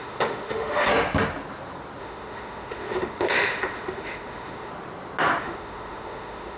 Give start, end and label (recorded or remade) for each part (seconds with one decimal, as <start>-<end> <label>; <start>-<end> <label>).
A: 0.0-0.9 remade; 0.9-2.0 recorded; 2.0-4.7 remade; 4.7-5.4 recorded; 5.4-6.6 remade

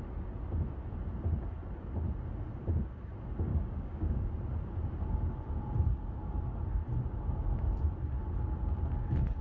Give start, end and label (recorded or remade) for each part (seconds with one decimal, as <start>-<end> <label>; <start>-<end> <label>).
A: 0.0-3.5 recorded; 3.5-4.2 remade; 4.2-9.4 recorded

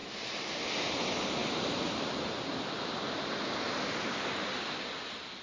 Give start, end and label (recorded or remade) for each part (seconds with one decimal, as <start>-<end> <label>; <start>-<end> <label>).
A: 0.0-0.7 remade; 0.7-1.4 recorded; 1.4-4.6 remade; 4.6-5.4 recorded

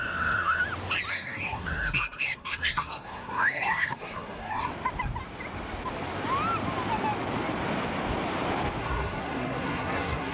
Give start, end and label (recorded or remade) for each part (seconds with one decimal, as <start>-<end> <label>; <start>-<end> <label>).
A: 0.0-0.6 remade; 0.6-1.1 recorded; 1.1-4.7 remade; 4.7-8.8 recorded; 8.8-10.3 remade

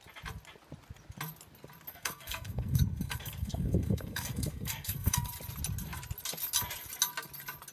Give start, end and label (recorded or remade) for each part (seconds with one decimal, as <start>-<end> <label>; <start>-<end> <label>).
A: 0.0-1.9 recorded; 1.9-5.3 remade; 5.3-7.7 recorded

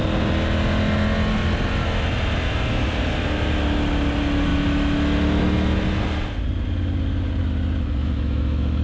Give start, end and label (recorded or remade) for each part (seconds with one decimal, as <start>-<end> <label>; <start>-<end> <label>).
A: 0.0-8.0 recorded; 8.0-8.8 remade

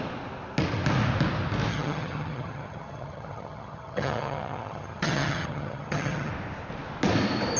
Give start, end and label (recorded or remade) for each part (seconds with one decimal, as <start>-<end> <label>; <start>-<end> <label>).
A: 0.0-1.7 recorded; 1.7-6.3 remade; 6.3-7.6 recorded